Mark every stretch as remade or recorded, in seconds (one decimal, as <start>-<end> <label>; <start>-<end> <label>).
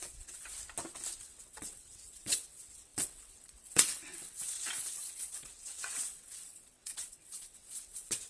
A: 0.0-0.5 remade; 0.5-1.2 recorded; 1.2-8.3 remade